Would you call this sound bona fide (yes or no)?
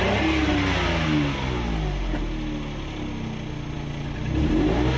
yes